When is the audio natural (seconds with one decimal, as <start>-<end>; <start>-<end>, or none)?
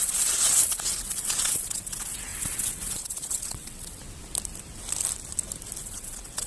4.0-5.8